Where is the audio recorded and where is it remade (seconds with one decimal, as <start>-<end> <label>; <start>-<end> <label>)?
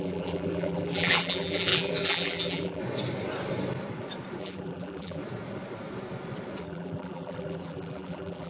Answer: 0.0-2.8 remade; 2.8-4.4 recorded; 4.4-5.2 remade; 5.2-6.6 recorded; 6.6-8.5 remade